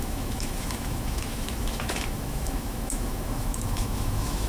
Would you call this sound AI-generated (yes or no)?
yes